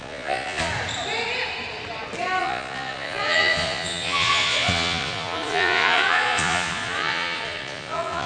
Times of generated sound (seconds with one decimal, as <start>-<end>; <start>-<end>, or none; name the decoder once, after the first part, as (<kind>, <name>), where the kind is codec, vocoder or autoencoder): 0.0-0.7 (vocoder, Vocos); 2.4-8.3